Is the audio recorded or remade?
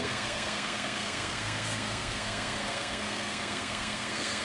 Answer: remade